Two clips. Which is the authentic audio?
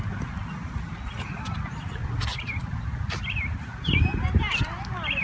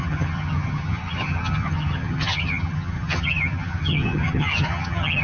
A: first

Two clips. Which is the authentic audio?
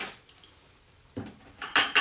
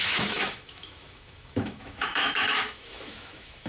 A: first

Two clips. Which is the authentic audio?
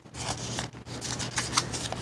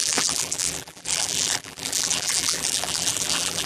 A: first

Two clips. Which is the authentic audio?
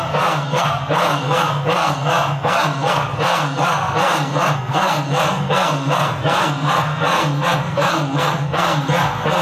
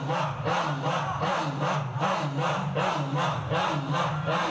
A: second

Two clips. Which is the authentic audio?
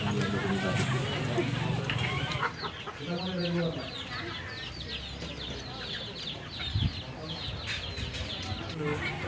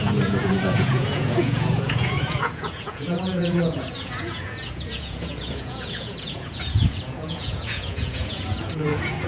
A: first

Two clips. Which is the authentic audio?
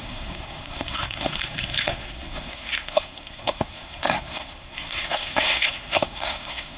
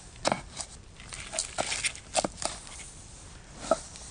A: second